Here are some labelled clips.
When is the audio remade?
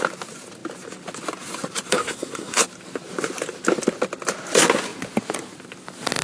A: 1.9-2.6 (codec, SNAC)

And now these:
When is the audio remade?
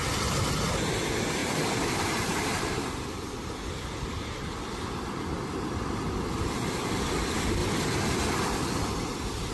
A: 1.4-2.9 (vocoder, BigVGAN v2)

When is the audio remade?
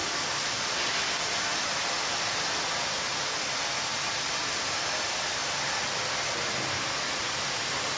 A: none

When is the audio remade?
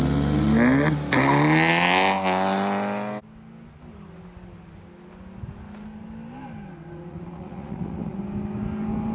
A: 7.1-8.2 (vocoder, Vocos)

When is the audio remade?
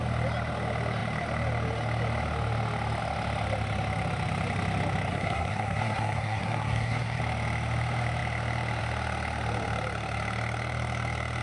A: 5.1-7.2 (codec, SNAC)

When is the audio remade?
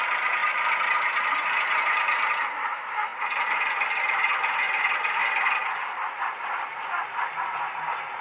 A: 0.0-3.1 (vocoder, BigVGAN v2); 4.0-5.2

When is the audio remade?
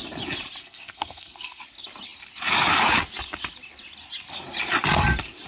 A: 0.6-1.6 (codec, SNAC)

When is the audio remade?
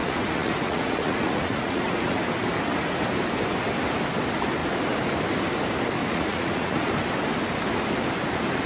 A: 0.0-2.2 (vocoder, Vocos); 6.0-6.9